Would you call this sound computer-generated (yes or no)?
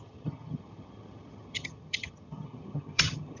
yes